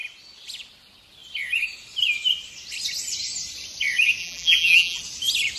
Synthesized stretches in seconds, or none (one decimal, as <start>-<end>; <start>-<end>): 4.2-5.0